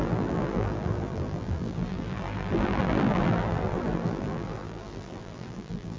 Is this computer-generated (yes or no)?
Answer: yes